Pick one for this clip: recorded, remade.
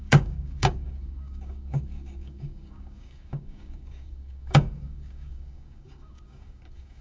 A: remade